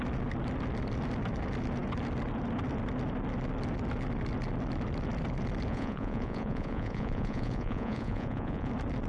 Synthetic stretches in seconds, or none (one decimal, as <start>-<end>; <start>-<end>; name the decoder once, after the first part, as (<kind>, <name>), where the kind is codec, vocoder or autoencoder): 5.7-8.7 (vocoder, Vocos)